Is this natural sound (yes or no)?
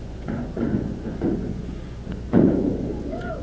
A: no